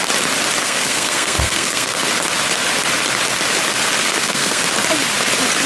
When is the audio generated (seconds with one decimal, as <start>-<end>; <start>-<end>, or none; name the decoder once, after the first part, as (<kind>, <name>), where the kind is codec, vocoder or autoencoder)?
0.6-2.0 (codec, SNAC); 4.0-4.6